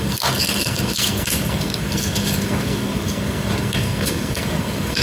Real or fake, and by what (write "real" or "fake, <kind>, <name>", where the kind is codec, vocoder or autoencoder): fake, codec, SNAC